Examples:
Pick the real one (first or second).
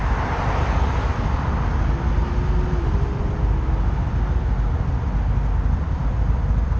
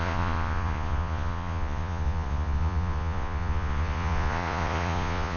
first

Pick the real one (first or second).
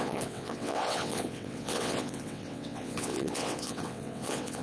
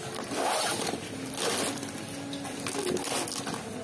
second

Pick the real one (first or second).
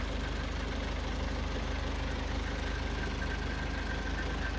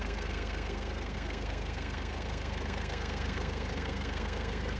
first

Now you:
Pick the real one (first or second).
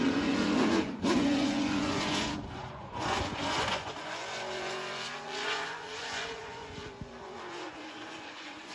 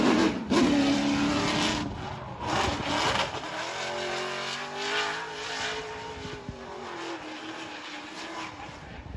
second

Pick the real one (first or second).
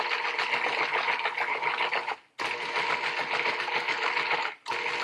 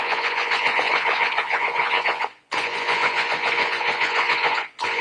first